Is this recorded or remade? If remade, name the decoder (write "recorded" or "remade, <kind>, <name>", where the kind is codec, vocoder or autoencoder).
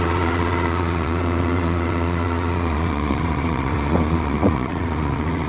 remade, vocoder, Vocos